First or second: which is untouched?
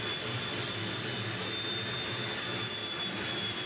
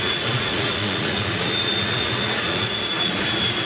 first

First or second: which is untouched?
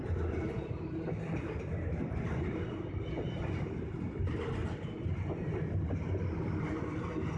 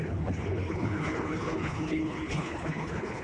first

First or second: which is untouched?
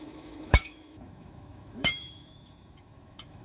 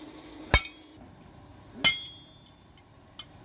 second